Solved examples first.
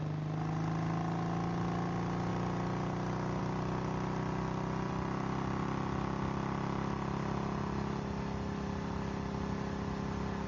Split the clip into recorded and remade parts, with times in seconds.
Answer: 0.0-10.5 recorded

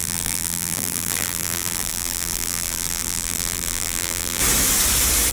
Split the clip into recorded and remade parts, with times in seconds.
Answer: 0.0-4.4 remade; 4.4-5.3 recorded